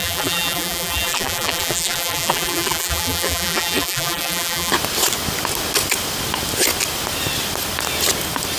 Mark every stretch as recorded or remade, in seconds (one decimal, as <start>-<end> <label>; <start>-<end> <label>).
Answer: 0.0-4.7 remade; 4.7-8.6 recorded